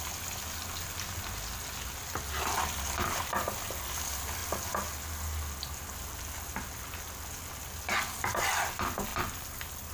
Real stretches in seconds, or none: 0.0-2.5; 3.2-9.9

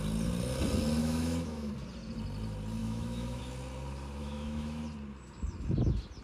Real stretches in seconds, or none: 0.0-1.0; 1.7-2.8; 3.4-4.2; 4.8-6.2

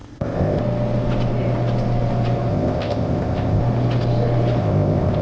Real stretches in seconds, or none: 0.6-2.5; 3.6-4.6